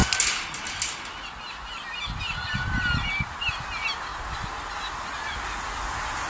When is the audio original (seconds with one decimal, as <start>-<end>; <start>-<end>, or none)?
0.0-6.3